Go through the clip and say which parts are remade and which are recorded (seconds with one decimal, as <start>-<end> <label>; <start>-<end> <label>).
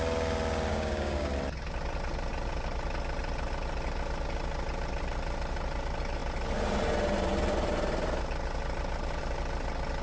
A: 0.0-0.7 recorded; 0.7-1.3 remade; 1.3-10.0 recorded